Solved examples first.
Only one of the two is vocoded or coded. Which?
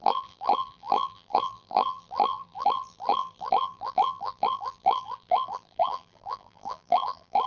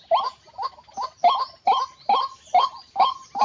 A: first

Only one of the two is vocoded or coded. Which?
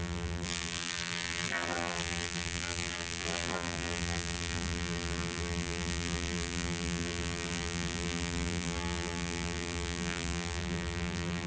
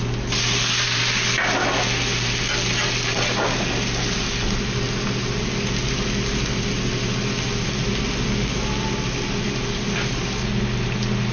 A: first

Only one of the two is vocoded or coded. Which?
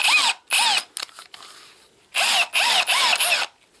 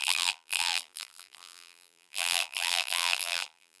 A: second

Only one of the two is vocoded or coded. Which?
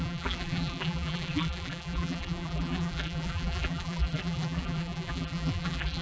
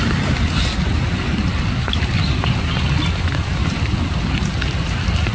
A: first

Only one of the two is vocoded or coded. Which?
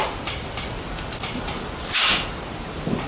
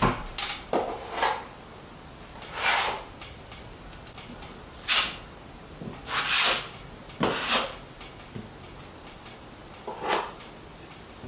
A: first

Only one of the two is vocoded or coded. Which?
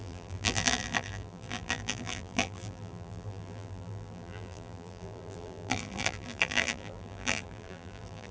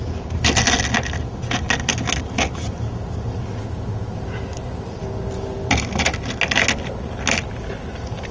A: first